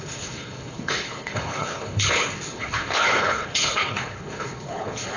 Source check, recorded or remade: remade